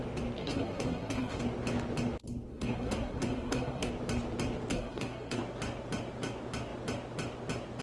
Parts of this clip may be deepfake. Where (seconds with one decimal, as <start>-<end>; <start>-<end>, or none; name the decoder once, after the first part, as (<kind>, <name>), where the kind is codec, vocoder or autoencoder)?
0.4-1.4 (codec, SNAC); 2.5-3.9; 4.7-5.4